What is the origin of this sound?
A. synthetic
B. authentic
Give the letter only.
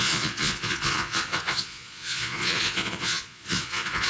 A